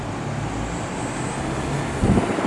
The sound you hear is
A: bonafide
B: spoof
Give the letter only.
A